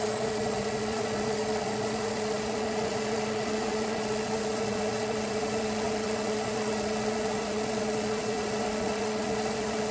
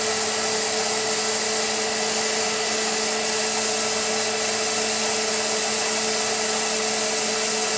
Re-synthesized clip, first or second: first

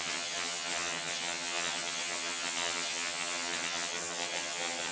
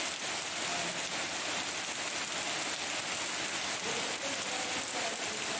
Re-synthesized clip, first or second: first